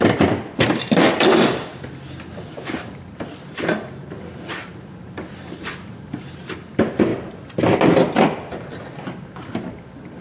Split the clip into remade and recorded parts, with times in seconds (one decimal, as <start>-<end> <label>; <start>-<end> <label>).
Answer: 0.0-7.1 remade; 7.1-10.2 recorded